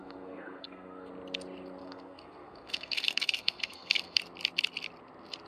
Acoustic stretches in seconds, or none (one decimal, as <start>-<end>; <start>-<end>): 1.1-1.8; 4.2-5.5